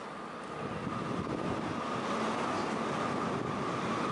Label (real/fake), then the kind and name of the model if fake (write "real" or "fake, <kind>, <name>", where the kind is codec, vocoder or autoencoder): real